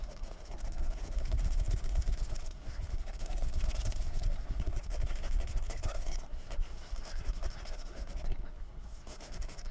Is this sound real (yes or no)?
no